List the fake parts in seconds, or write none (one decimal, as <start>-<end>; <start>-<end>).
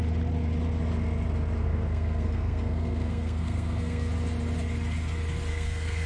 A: 1.6-4.1; 5.5-6.1